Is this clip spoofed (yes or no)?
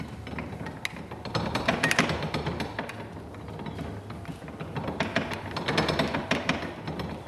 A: no